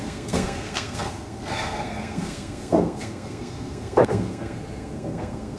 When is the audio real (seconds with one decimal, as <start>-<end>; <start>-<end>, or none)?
none